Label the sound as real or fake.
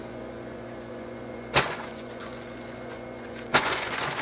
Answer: fake